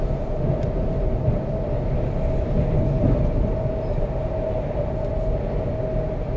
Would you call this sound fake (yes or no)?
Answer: no